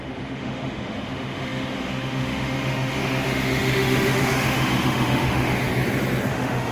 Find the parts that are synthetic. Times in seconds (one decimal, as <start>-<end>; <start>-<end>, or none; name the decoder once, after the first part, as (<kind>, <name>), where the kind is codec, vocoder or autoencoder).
0.0-5.7 (autoencoder, DAC-VAE); 6.3-6.7